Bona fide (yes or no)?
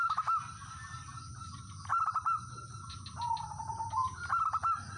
no